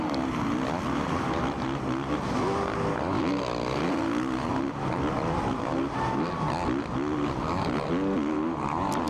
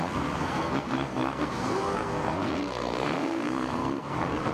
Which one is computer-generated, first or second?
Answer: second